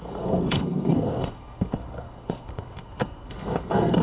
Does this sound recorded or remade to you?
remade